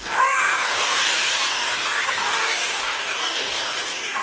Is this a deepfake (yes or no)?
yes